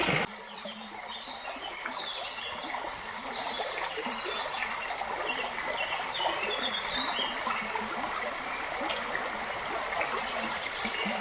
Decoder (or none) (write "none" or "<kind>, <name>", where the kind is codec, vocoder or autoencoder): none